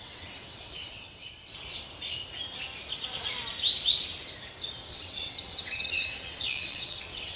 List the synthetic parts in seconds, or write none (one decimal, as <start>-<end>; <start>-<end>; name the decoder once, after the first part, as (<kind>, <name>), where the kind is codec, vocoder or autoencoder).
0.0-1.5 (vocoder, WaveNeXt); 4.9-7.4